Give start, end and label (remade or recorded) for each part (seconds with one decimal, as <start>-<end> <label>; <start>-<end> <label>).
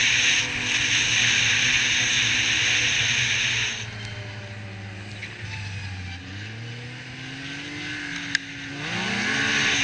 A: 0.0-9.8 recorded